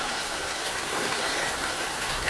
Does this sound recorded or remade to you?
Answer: remade